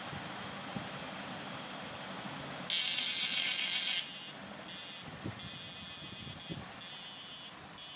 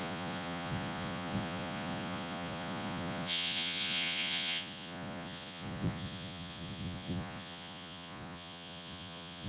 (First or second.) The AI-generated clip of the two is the second